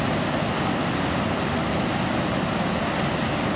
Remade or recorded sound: recorded